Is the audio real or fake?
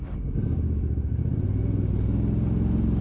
real